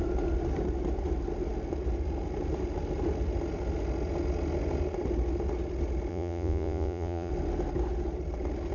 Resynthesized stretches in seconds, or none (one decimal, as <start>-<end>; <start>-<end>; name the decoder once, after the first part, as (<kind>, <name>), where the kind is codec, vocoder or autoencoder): 6.1-7.3 (vocoder, Vocos)